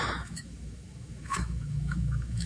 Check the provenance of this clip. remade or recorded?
remade